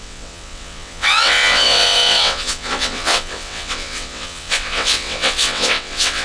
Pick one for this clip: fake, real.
fake